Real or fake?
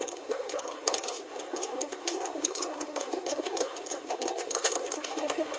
fake